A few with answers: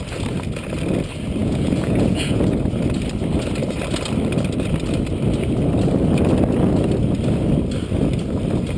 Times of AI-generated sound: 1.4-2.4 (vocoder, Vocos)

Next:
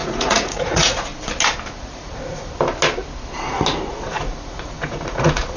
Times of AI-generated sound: 0.0-1.1 (vocoder, Vocos); 1.8-2.5; 3.9-5.6

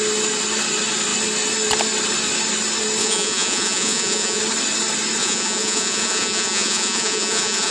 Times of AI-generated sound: 3.0-4.4 (vocoder, Vocos); 5.2-7.7

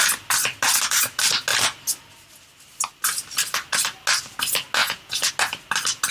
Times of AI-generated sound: 4.8-5.3 (vocoder, Vocos)

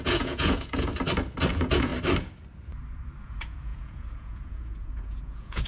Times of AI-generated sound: 0.0-0.9 (vocoder, Vocos); 1.5-1.9; 3.2-5.7

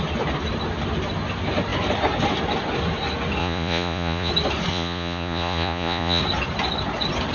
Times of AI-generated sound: 3.4-4.3 (vocoder, Vocos); 4.7-6.2